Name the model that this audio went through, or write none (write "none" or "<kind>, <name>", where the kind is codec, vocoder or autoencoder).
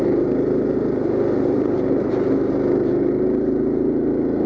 none